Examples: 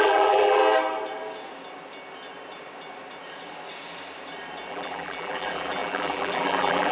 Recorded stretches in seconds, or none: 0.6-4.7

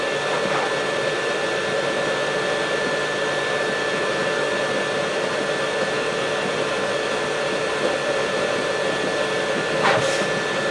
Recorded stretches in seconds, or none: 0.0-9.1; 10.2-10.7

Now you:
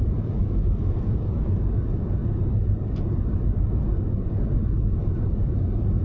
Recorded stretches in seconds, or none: none